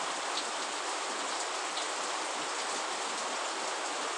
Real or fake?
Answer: real